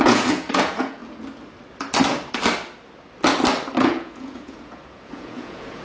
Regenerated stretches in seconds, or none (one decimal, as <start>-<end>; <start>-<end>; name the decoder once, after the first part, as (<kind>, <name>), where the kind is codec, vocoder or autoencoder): 0.0-1.0 (vocoder, Vocos); 3.8-5.8